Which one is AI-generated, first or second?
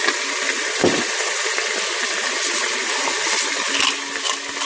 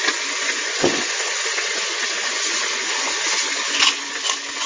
second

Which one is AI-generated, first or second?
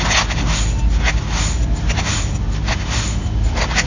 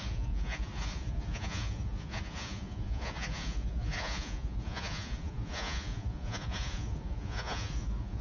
second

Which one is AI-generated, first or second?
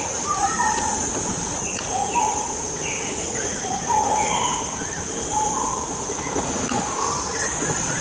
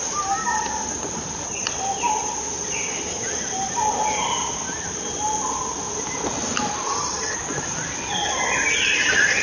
first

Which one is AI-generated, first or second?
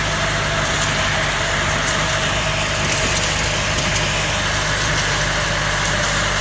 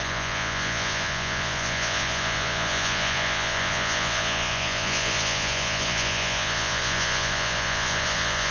second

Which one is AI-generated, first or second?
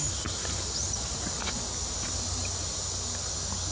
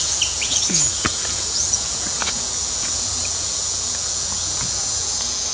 second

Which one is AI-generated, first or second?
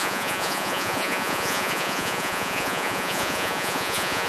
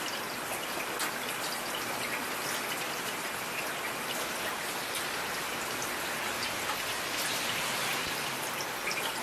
first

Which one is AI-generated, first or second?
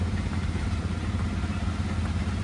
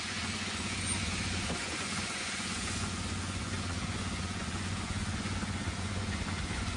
second